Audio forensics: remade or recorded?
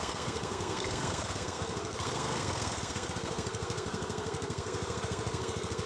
remade